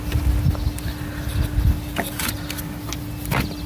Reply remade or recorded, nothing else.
recorded